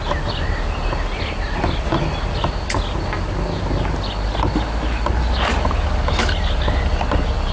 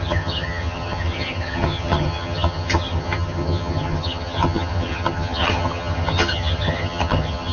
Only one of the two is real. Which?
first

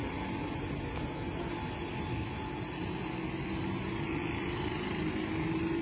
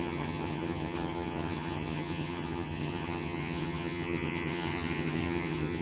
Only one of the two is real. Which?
first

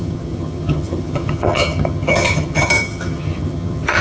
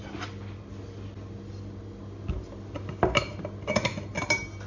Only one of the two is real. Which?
second